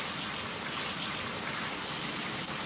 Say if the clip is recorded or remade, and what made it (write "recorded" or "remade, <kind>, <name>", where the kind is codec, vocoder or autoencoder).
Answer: recorded